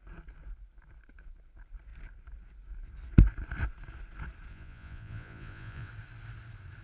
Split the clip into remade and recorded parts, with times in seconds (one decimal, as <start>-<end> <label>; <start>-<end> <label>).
0.0-4.5 recorded; 4.5-5.9 remade; 5.9-6.8 recorded

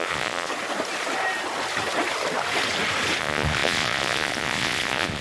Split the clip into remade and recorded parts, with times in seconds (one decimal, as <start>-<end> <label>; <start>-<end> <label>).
0.0-0.5 remade; 0.5-3.2 recorded; 3.2-5.2 remade

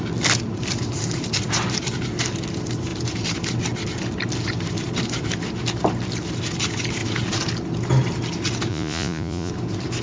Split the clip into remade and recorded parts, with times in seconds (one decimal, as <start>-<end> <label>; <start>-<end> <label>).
0.0-8.7 recorded; 8.7-9.5 remade; 9.5-10.0 recorded

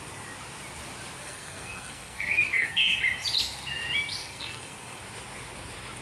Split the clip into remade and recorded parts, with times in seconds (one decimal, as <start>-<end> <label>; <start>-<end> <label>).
0.0-1.2 recorded; 1.2-3.0 remade; 3.0-4.2 recorded; 4.2-5.0 remade; 5.0-6.0 recorded

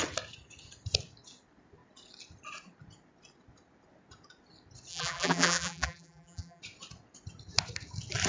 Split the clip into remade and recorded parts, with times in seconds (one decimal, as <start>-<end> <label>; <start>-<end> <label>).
0.0-4.9 recorded; 4.9-6.6 remade; 6.6-8.3 recorded

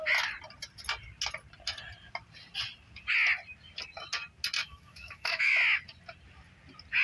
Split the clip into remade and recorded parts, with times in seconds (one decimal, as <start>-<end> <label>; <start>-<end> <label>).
0.0-4.6 recorded; 4.6-5.5 remade; 5.5-7.0 recorded

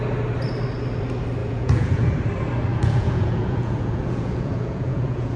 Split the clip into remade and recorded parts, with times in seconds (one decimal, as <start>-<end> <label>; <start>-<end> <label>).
0.0-1.4 recorded; 1.4-2.1 remade; 2.1-2.7 recorded; 2.7-5.4 remade

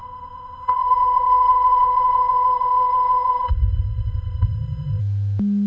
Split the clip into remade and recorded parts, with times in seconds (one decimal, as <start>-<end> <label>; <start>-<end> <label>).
0.0-5.0 remade; 5.0-5.7 recorded